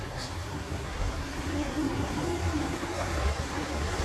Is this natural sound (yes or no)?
no